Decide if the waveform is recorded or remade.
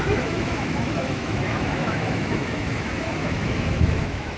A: remade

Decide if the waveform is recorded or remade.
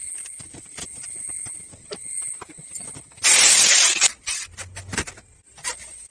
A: recorded